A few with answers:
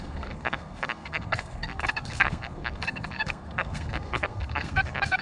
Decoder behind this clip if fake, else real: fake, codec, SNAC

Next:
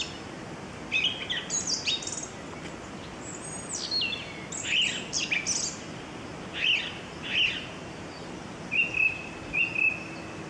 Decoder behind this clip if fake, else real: real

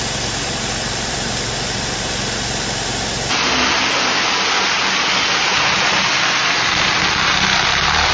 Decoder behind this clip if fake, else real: real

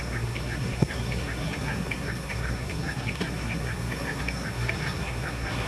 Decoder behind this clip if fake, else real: fake, codec, SNAC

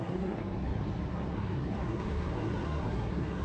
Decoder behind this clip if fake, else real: fake, codec, SNAC